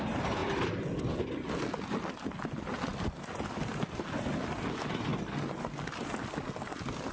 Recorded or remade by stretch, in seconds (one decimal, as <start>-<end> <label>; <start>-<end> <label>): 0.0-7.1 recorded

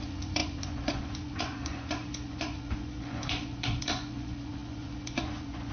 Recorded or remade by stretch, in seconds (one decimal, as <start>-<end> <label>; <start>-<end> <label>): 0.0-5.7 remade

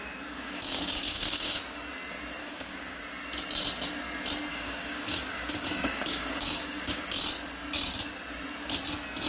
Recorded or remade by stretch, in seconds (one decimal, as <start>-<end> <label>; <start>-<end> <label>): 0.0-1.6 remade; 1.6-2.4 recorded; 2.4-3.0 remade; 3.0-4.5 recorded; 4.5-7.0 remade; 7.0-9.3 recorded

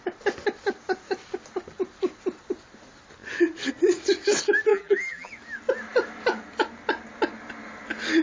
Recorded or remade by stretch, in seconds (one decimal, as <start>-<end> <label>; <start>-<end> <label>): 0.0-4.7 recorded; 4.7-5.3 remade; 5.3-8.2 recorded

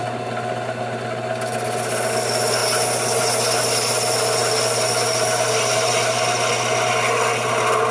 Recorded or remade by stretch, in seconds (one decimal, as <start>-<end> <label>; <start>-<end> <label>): 0.0-7.9 recorded

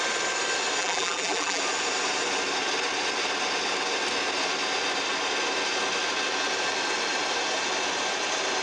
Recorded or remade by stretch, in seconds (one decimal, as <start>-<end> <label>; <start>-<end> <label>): 0.0-0.8 recorded; 0.8-1.6 remade; 1.6-8.6 recorded

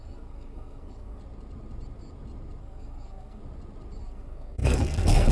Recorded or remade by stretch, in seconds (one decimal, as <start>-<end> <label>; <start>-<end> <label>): 0.0-1.2 remade; 1.2-2.6 recorded; 2.6-3.4 remade; 3.4-4.0 recorded; 4.0-5.3 remade

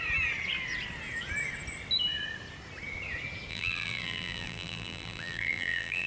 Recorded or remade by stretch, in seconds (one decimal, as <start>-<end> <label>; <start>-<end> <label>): 0.0-3.5 recorded; 3.5-6.1 remade